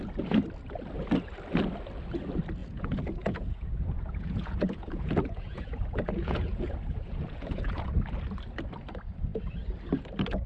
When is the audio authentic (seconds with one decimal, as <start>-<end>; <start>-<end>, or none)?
0.0-2.6; 7.8-10.5